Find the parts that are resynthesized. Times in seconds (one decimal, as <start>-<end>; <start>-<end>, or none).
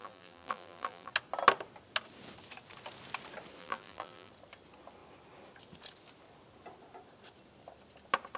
0.0-1.1; 3.6-4.3